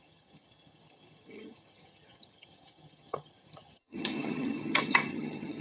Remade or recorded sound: remade